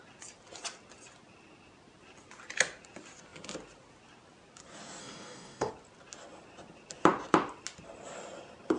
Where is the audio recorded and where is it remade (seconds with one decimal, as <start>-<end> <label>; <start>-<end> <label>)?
0.0-5.0 recorded; 5.0-5.7 remade; 5.7-8.8 recorded

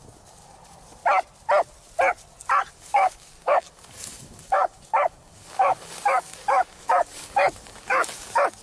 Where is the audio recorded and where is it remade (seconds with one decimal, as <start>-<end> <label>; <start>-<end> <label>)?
0.0-1.0 remade; 1.0-2.7 recorded; 2.7-8.6 remade

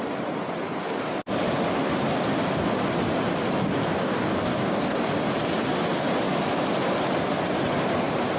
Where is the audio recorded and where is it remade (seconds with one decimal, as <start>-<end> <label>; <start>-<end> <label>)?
0.0-4.0 recorded; 4.0-5.1 remade; 5.1-8.4 recorded

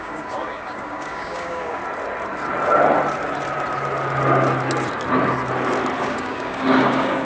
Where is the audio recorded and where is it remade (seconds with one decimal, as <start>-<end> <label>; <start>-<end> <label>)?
0.0-1.8 remade; 1.8-6.0 recorded; 6.0-7.2 remade

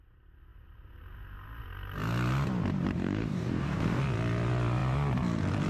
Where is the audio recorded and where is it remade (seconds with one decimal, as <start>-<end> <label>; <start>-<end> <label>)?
0.0-3.0 recorded; 3.0-4.0 remade; 4.0-5.7 recorded

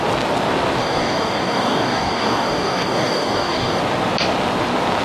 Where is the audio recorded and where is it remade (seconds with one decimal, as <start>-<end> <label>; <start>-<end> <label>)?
0.0-0.8 recorded; 0.8-3.8 remade; 3.8-5.0 recorded